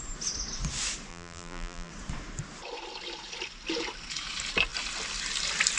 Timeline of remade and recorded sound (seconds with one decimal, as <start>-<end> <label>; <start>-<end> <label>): 0.0-1.1 recorded; 1.1-1.9 remade; 1.9-5.8 recorded